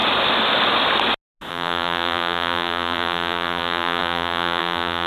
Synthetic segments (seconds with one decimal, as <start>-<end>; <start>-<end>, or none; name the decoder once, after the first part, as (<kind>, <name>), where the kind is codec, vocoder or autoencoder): 1.5-5.1 (vocoder, BigVGAN v2)